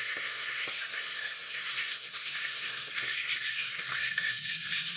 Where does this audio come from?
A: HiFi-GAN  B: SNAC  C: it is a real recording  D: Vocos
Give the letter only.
B